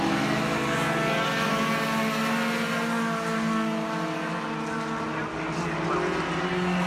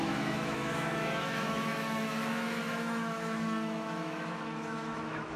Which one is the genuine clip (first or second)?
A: first